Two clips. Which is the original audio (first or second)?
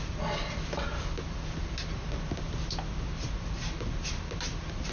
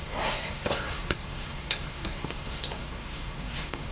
first